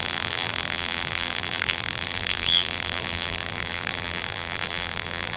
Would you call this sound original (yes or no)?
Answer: no